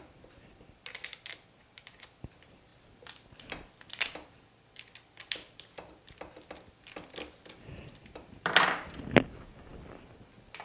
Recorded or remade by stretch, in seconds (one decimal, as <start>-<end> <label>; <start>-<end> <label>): 0.0-8.0 recorded; 8.0-8.6 remade; 8.6-10.6 recorded